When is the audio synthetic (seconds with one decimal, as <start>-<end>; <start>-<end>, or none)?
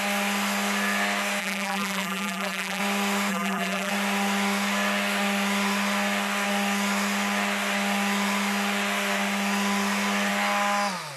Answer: 1.4-2.8; 3.3-3.9